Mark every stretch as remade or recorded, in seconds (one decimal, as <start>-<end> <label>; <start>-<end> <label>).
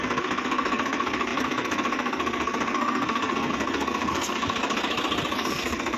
0.0-4.6 remade; 4.6-5.4 recorded; 5.4-6.0 remade